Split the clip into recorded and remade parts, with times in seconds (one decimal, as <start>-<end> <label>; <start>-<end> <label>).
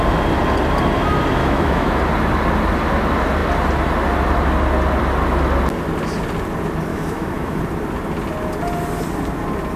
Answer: 0.0-1.4 recorded; 1.4-2.0 remade; 2.0-6.9 recorded; 6.9-7.6 remade; 7.6-9.8 recorded